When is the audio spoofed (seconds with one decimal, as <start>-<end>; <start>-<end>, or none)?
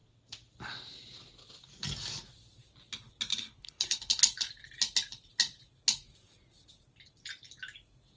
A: 3.3-4.2